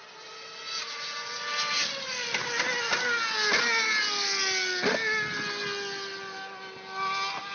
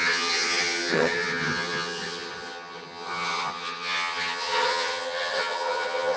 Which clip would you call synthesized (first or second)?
second